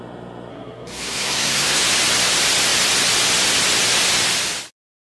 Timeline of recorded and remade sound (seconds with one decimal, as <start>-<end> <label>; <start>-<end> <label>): 0.0-0.5 recorded; 0.5-1.8 remade; 1.8-5.1 recorded